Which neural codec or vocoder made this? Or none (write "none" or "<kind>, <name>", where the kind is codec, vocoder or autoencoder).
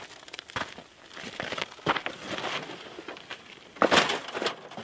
none